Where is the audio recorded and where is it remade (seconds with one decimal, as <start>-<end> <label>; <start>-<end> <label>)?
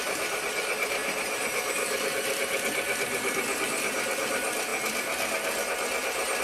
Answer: 0.0-1.0 recorded; 1.0-3.7 remade; 3.7-6.4 recorded